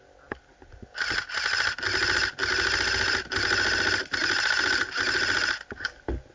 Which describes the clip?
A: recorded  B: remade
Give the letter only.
A